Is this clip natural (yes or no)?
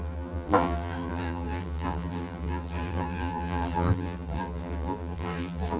no